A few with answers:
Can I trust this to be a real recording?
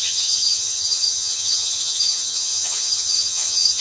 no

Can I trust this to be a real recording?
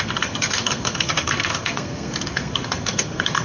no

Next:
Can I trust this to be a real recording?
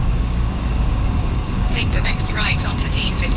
no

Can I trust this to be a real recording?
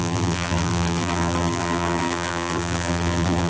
no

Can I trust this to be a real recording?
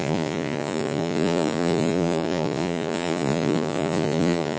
no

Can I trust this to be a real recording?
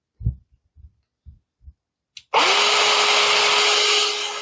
yes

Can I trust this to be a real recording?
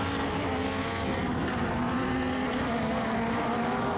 yes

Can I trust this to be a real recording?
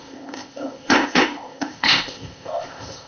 no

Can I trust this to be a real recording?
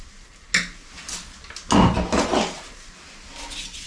yes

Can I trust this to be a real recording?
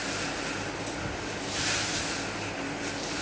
yes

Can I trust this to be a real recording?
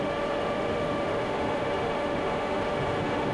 no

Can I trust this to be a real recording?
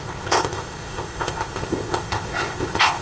no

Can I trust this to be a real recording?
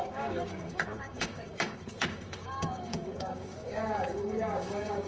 no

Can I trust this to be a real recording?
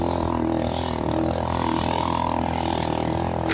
yes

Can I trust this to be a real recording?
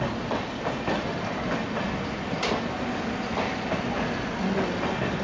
yes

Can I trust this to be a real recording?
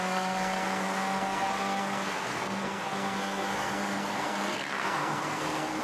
no